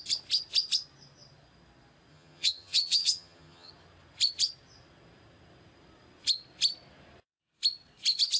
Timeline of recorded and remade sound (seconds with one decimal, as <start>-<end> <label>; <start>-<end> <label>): 0.0-2.1 recorded; 2.1-3.7 remade; 3.7-8.4 recorded